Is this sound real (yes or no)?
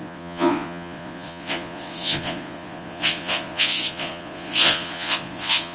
no